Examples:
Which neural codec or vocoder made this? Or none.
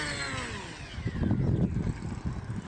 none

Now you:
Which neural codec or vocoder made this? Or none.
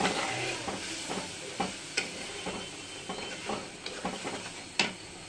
none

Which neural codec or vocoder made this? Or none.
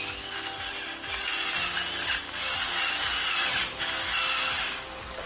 none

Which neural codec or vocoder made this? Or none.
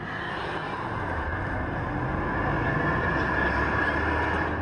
none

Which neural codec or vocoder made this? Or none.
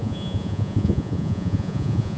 vocoder, Vocos